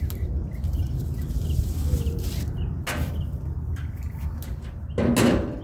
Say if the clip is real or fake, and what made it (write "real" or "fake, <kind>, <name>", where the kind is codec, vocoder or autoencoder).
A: real